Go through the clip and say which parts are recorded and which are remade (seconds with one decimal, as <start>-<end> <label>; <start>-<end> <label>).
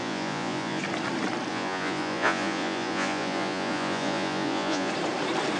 0.0-0.8 remade; 0.8-1.5 recorded; 1.5-4.9 remade; 4.9-5.6 recorded